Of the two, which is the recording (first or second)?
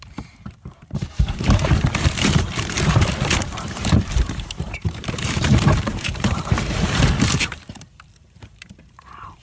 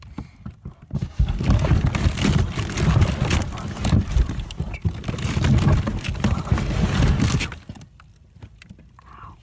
second